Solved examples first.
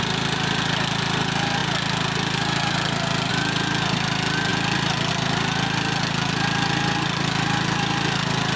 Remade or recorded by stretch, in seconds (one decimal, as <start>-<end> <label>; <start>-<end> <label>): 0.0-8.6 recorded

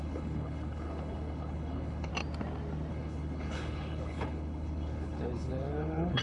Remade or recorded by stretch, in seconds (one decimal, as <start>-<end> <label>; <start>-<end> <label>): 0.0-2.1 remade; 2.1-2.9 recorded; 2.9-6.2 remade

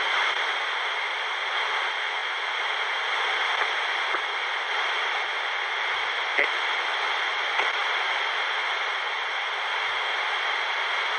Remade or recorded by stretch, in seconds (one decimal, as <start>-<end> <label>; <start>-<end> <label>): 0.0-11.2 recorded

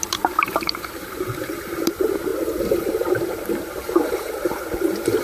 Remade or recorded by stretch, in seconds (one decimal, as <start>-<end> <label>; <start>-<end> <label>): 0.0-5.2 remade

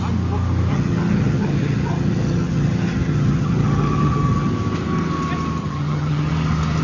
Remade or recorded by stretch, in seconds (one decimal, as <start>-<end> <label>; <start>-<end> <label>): 0.0-0.7 recorded; 0.7-4.5 remade; 4.5-5.6 recorded; 5.6-6.3 remade; 6.3-6.8 recorded

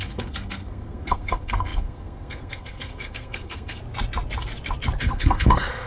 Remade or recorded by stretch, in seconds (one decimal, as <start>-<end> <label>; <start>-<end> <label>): 0.0-3.8 remade; 3.8-5.0 recorded; 5.0-5.9 remade

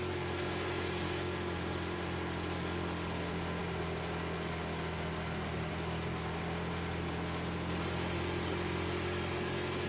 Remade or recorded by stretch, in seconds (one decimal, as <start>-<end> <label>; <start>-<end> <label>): 0.0-9.9 recorded

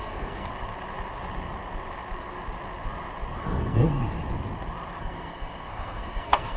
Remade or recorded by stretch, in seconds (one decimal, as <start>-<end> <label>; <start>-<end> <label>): 0.0-0.5 remade; 0.5-3.4 recorded; 3.4-4.0 remade; 4.0-5.0 recorded; 5.0-6.6 remade